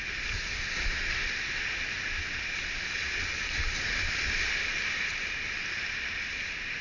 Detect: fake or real real